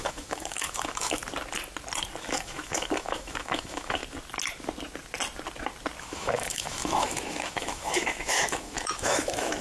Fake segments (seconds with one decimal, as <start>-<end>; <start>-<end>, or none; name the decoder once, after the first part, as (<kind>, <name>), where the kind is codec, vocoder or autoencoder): 0.0-1.2 (autoencoder, DAC-VAE); 2.2-4.0; 6.0-9.6